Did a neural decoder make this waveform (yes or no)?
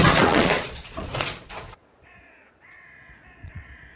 yes